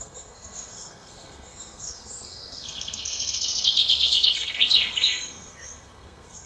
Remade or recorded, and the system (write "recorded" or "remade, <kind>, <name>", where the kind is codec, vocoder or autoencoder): remade, codec, SNAC